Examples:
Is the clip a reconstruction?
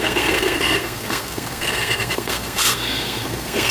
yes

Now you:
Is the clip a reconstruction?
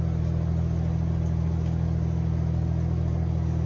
no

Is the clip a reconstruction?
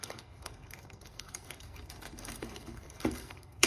yes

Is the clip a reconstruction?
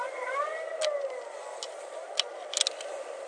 no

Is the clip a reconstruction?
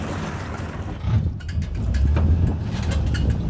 no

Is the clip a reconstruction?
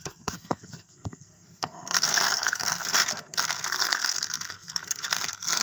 yes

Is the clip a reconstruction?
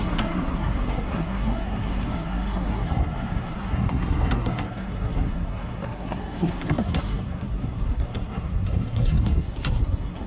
yes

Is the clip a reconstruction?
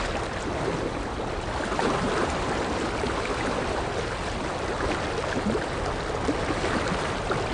no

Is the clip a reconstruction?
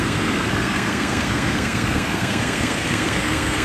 yes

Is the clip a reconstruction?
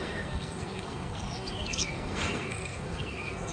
yes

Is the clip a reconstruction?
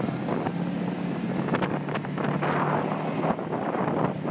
no